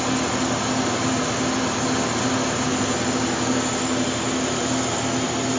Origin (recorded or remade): recorded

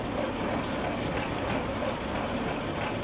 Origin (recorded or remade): recorded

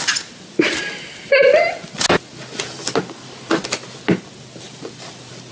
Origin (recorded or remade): recorded